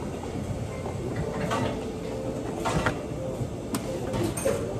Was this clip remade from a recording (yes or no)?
no